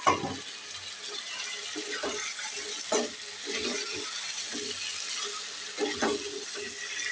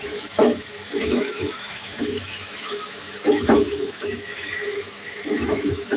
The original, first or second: first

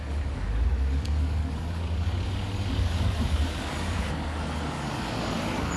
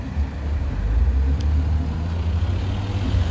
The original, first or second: second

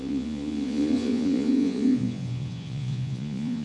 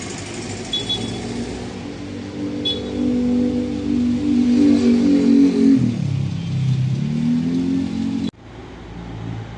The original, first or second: second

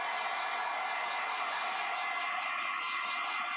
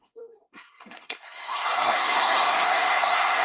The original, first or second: first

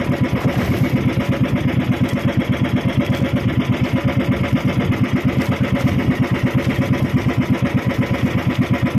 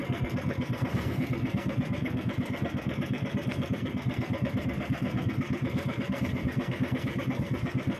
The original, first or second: first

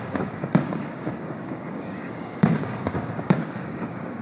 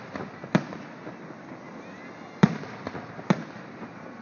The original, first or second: second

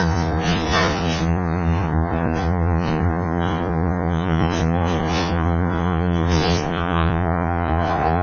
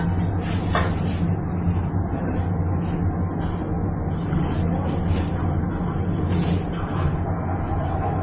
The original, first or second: second